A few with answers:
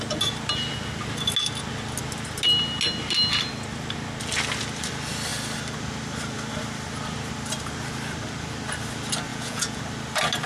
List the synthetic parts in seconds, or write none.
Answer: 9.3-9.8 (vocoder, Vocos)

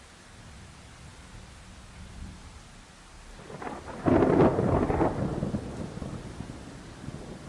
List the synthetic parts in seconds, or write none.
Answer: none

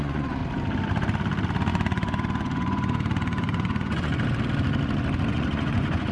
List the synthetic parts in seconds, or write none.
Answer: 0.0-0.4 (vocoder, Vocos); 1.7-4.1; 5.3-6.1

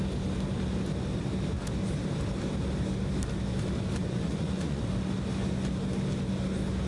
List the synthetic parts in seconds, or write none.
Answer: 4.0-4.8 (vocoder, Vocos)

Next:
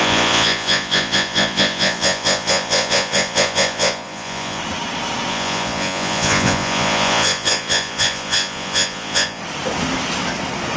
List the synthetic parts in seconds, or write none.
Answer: 0.0-4.6 (vocoder, Vocos); 5.3-9.4